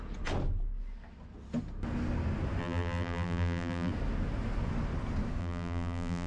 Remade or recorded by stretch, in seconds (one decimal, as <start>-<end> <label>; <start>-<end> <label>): 0.0-2.6 recorded; 2.6-3.9 remade; 3.9-5.4 recorded; 5.4-6.3 remade